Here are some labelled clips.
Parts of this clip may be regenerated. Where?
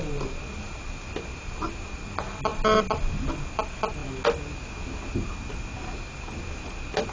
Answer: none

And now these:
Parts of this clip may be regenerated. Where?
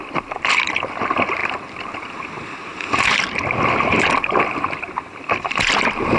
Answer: 0.0-6.2 (vocoder, BigVGAN v2)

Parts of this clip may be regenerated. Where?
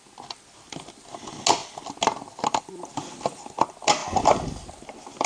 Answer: none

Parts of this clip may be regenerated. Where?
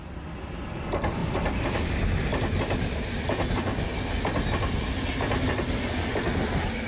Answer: 1.2-1.9 (vocoder, BigVGAN v2)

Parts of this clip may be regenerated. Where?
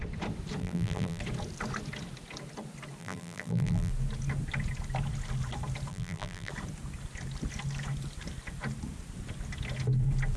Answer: 0.6-1.2 (vocoder, BigVGAN v2); 3.0-3.9; 5.9-6.5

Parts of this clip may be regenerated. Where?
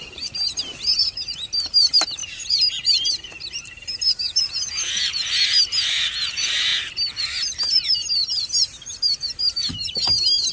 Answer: 0.0-6.7 (vocoder, BigVGAN v2); 7.2-10.5